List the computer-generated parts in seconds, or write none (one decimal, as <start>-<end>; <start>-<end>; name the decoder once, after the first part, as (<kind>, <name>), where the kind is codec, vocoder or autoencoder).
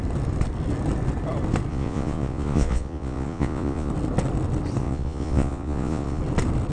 1.7-3.9 (vocoder, Vocos); 4.8-6.2